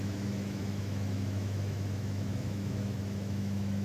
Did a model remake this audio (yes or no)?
yes